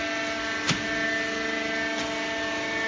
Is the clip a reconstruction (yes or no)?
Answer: no